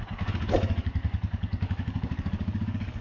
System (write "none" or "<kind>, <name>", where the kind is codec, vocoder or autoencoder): codec, DAC